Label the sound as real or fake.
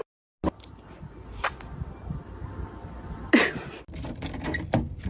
real